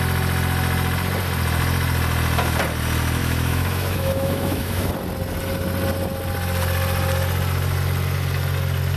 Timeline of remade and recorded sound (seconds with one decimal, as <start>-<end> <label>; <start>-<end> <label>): 0.0-3.2 recorded; 3.2-4.9 remade; 4.9-9.0 recorded